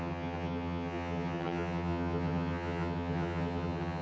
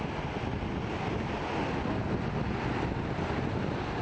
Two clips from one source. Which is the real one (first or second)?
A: second